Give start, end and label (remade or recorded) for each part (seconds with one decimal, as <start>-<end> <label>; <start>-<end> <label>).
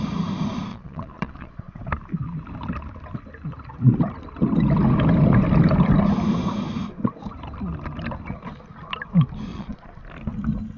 0.0-0.7 recorded; 0.7-1.7 remade; 1.7-9.5 recorded; 9.5-10.0 remade; 10.0-10.8 recorded